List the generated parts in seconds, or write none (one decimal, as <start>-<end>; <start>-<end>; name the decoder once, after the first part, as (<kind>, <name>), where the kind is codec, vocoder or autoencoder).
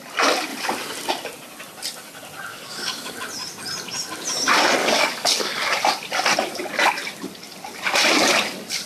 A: 2.5-3.1 (codec, DAC); 4.8-5.6